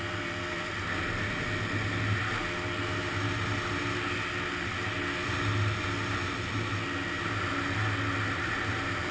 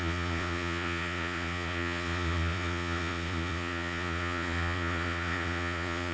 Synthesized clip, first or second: second